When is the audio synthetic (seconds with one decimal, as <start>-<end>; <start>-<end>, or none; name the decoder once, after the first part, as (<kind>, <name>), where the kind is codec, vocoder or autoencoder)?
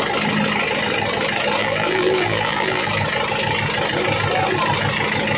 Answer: 1.6-2.9 (vocoder, BigVGAN v2)